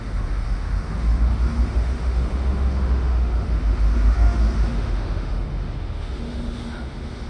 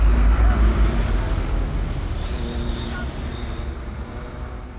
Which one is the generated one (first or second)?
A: first